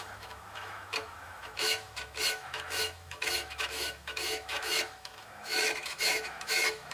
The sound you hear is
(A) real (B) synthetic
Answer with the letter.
B